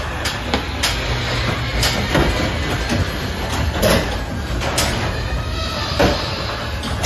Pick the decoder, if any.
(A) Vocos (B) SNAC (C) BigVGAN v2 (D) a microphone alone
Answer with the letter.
D